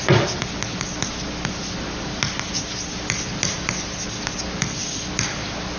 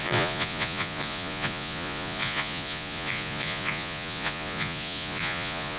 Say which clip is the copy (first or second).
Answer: second